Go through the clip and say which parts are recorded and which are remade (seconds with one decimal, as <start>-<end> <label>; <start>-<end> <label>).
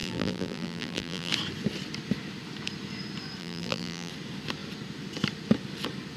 0.0-1.3 remade; 1.3-3.4 recorded; 3.4-4.1 remade; 4.1-6.2 recorded